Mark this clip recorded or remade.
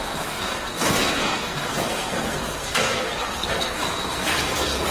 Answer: remade